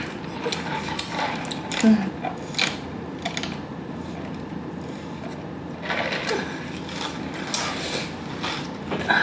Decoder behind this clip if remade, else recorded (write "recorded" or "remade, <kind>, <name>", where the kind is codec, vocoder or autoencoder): recorded